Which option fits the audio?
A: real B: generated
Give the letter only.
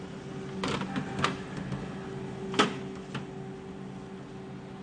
A